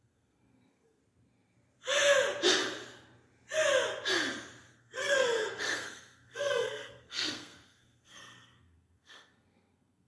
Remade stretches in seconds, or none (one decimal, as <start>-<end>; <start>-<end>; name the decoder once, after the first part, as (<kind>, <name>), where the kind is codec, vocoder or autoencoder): 0.0-1.0 (codec, SNAC); 4.8-10.1